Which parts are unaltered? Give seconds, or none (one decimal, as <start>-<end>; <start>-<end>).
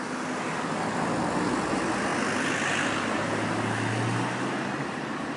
2.1-4.4